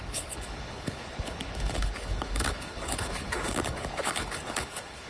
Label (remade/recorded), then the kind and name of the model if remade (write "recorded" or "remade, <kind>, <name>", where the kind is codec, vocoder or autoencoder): remade, codec, HILCodec